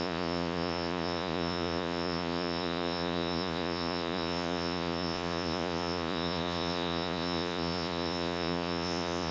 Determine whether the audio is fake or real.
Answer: fake